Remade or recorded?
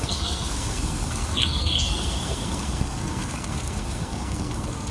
remade